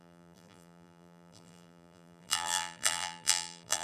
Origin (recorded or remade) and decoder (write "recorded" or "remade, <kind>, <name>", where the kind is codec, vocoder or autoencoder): remade, vocoder, BigVGAN v2